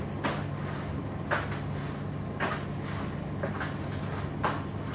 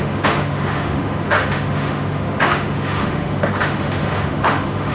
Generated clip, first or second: second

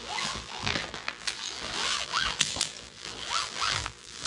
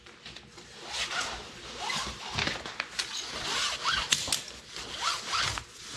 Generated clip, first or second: first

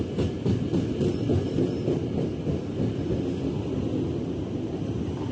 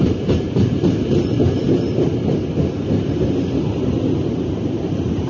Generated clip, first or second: second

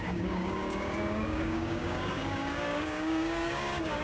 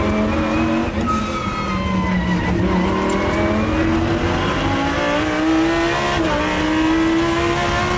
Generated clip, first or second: first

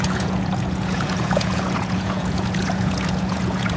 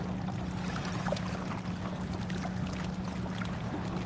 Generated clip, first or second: first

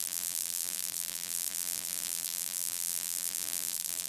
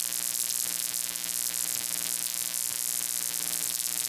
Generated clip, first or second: first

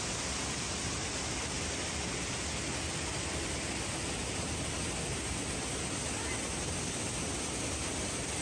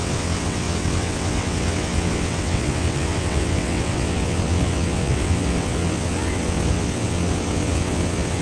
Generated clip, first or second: second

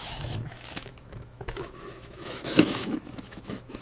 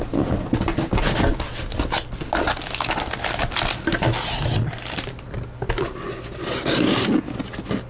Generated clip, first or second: first